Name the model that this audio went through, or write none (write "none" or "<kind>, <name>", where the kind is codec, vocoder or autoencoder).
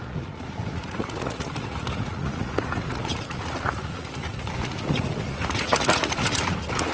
vocoder, Vocos